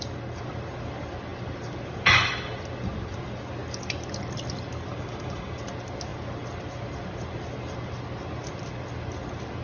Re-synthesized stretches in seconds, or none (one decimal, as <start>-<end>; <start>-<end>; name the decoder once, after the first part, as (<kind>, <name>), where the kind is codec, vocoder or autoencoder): 4.9-5.6 (codec, DAC)